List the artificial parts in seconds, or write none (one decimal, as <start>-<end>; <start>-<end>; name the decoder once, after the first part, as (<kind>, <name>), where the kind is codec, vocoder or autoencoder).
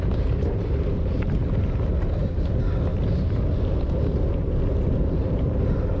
0.0-1.4 (vocoder, BigVGAN v2); 5.0-6.0